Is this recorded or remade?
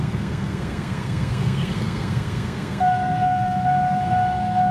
remade